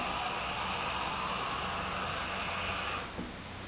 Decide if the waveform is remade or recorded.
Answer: recorded